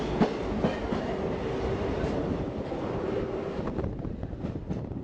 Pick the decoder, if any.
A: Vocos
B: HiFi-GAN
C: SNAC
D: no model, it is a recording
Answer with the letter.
D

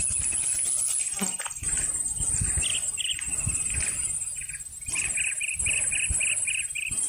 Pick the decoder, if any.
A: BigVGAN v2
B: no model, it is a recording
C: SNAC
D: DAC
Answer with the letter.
B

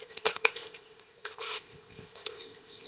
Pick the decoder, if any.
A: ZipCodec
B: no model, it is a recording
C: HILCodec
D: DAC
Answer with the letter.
A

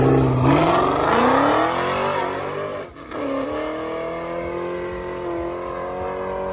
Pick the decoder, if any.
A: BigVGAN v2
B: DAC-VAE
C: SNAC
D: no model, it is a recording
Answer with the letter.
D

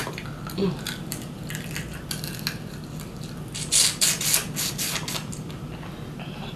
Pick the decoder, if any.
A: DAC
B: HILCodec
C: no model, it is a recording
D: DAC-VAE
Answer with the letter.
C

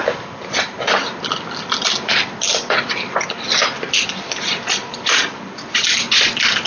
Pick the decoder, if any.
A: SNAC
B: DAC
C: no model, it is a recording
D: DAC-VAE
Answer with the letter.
C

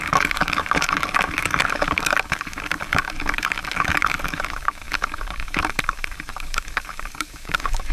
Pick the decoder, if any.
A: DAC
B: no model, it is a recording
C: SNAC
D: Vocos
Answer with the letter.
A